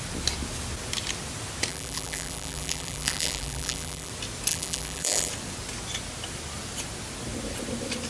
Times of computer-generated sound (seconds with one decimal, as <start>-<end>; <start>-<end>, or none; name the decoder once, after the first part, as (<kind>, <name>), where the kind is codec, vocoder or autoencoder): 1.7-4.1 (vocoder, BigVGAN v2); 4.5-5.3